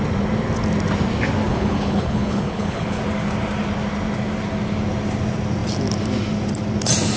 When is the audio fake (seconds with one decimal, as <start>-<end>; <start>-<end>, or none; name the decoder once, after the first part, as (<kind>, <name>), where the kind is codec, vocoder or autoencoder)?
1.5-3.0 (codec, HILCodec)